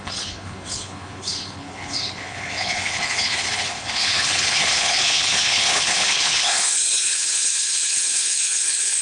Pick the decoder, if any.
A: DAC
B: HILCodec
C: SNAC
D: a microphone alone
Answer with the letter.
B